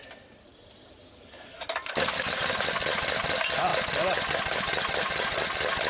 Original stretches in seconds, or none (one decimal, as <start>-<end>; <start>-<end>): 0.0-5.9